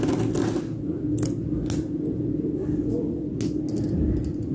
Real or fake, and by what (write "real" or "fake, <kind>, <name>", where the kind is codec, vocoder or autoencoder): real